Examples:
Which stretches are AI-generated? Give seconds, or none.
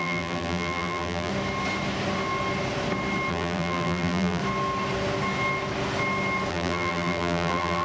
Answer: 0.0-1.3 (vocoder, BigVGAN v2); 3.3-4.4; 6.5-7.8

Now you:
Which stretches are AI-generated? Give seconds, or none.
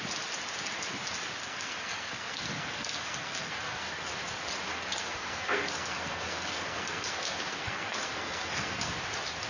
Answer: 1.4-4.1 (codec, SNAC); 4.7-8.9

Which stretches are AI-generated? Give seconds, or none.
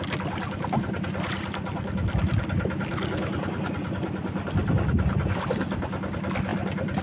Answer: none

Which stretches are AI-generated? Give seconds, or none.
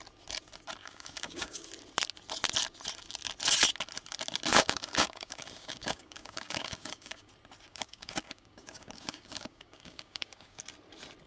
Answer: 0.8-1.7 (codec, DAC); 4.5-7.3; 7.7-10.6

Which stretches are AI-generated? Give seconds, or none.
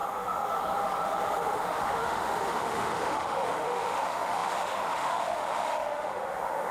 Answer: 0.0-6.7 (autoencoder, DAC-VAE)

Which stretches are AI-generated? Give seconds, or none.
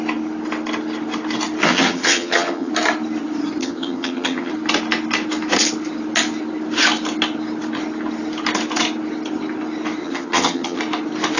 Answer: 1.6-2.7 (vocoder, HiFi-GAN); 3.6-4.5; 10.0-10.8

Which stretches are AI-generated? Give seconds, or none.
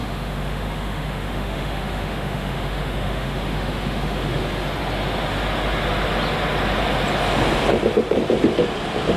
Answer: 0.0-4.4 (autoencoder, DAC-VAE)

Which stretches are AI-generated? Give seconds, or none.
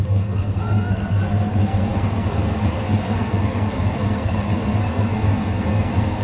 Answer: 0.0-6.2 (codec, SNAC)